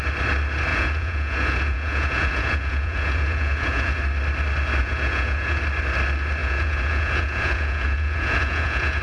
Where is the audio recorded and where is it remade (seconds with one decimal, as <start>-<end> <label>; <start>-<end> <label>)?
0.0-0.7 recorded; 0.7-4.0 remade; 4.0-4.8 recorded; 4.8-5.6 remade; 5.6-6.4 recorded; 6.4-9.0 remade